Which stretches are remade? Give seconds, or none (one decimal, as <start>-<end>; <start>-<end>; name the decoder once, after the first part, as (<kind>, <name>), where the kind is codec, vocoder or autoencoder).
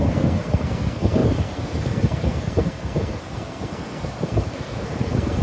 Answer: 0.0-5.4 (codec, SNAC)